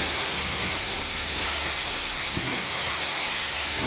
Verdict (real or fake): fake